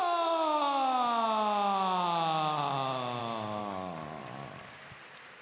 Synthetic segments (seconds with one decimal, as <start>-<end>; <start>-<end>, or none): 3.6-4.2